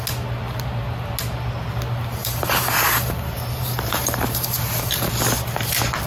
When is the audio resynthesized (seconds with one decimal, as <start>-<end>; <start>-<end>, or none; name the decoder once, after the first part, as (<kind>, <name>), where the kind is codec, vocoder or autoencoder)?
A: 2.2-5.1 (vocoder, BigVGAN v2)